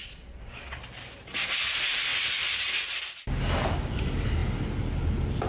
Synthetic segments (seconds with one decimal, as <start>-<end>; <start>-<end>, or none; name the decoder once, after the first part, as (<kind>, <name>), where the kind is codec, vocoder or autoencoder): 0.0-0.8 (vocoder, Vocos)